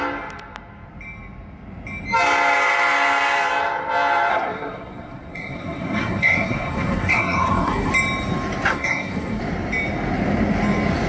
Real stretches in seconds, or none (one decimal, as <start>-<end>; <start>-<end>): 0.0-4.3; 7.9-8.7; 9.4-11.1